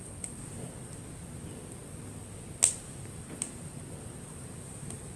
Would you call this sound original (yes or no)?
yes